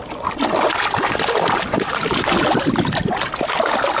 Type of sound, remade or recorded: recorded